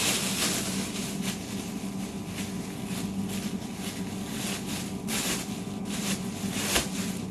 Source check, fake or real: real